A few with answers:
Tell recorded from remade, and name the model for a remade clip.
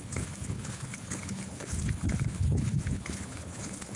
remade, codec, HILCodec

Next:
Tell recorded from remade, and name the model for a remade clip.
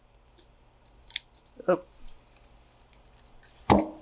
recorded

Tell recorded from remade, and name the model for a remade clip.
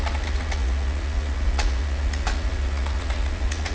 remade, vocoder, Vocos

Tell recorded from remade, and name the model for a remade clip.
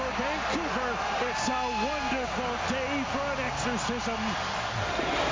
recorded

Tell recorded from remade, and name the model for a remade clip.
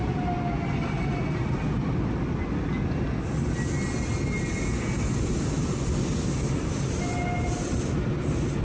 recorded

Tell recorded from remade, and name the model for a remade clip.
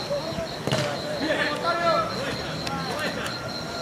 recorded